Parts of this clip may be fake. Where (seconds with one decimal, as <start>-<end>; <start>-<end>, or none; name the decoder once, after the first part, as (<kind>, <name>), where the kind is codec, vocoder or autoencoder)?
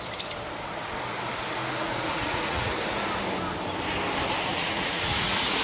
1.6-2.7 (vocoder, Vocos); 4.5-5.6